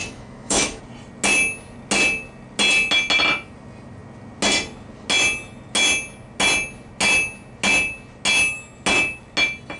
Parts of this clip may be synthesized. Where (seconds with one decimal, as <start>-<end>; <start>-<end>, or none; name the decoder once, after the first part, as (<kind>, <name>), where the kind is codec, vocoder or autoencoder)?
0.0-0.8 (autoencoder, DAC-VAE)